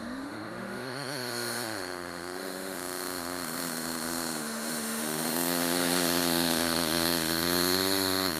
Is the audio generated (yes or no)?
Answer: yes